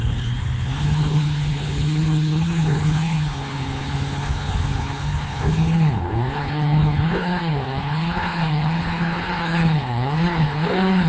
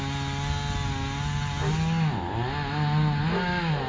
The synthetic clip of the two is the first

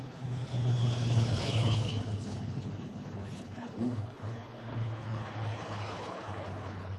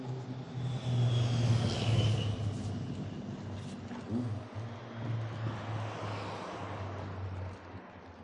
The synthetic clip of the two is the first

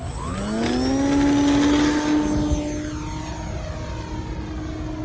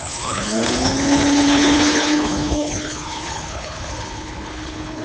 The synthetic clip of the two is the second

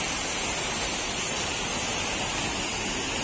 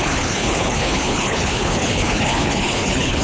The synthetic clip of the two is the second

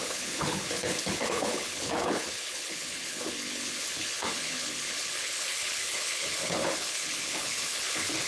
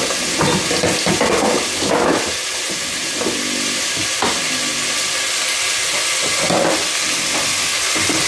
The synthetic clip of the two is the first